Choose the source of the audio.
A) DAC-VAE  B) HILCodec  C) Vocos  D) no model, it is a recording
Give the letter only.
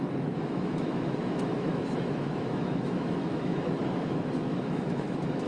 A